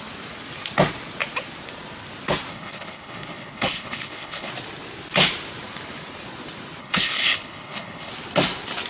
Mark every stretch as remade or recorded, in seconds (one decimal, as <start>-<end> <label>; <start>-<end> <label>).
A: 0.0-2.5 recorded; 2.5-4.5 remade; 4.5-6.8 recorded; 6.8-8.1 remade; 8.1-8.9 recorded